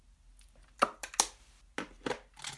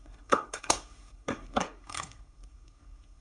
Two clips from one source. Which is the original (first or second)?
first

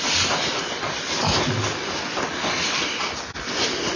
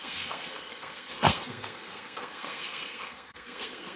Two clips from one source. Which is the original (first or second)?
first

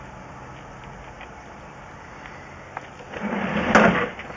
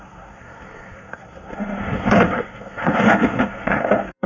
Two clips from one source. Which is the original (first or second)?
first